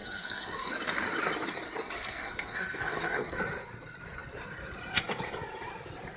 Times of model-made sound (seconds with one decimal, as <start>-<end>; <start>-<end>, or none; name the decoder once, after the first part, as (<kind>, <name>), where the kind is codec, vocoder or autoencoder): 0.0-0.7 (codec, SNAC); 2.0-3.4